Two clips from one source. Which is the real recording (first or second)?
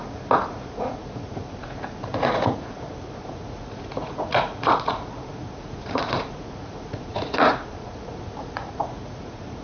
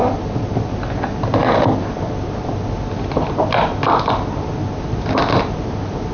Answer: second